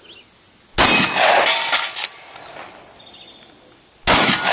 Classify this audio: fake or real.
real